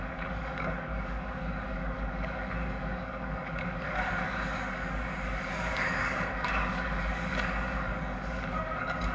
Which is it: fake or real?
fake